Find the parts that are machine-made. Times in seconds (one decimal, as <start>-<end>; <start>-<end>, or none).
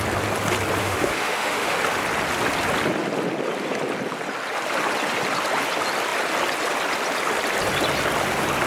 0.8-1.8